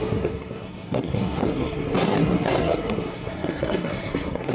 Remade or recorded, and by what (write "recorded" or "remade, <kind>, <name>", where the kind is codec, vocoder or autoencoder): remade, codec, SNAC